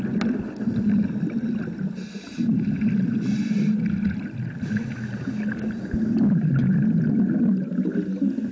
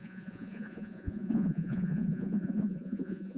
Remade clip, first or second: second